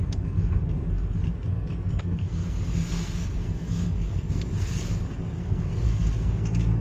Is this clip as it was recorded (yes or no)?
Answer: no